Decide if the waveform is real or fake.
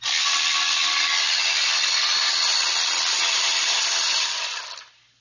real